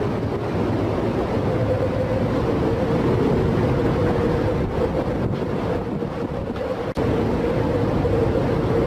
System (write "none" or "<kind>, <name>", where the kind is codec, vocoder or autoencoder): none